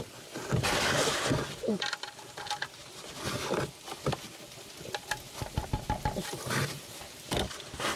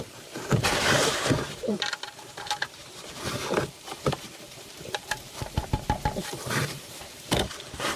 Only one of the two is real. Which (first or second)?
first